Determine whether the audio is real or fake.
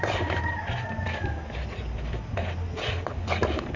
real